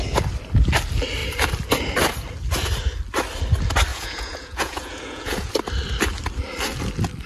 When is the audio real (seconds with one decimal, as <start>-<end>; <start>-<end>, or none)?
0.0-3.9; 5.5-7.3